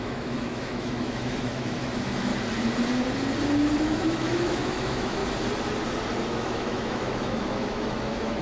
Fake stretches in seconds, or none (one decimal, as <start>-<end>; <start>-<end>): 0.0-2.3; 3.8-5.2; 6.3-8.4